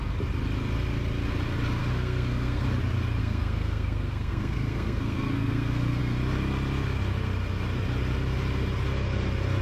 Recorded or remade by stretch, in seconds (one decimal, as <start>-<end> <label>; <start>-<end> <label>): 0.0-1.8 recorded; 1.8-2.8 remade; 2.8-3.2 recorded; 3.2-6.0 remade; 6.0-9.6 recorded

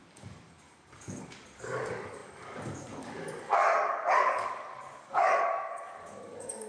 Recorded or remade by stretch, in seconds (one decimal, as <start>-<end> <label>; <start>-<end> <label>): 0.0-6.7 remade

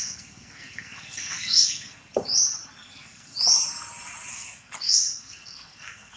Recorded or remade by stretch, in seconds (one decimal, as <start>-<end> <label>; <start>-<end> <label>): 0.0-2.0 remade; 2.0-2.9 recorded; 2.9-3.3 remade; 3.3-4.3 recorded; 4.3-6.2 remade

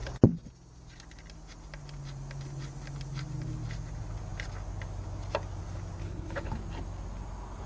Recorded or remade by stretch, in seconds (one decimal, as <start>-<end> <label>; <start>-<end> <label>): 0.0-6.0 recorded; 6.0-6.5 remade; 6.5-7.7 recorded

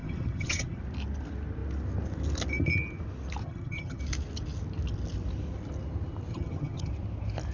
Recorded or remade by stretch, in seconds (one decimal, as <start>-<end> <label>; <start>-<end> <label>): 0.0-0.8 remade; 0.8-3.4 recorded; 3.4-4.0 remade; 4.0-6.3 recorded; 6.3-6.9 remade; 6.9-7.5 recorded